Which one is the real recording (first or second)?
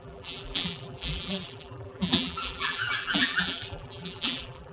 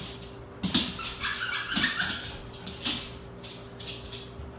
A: second